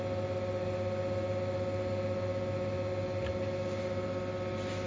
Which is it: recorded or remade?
recorded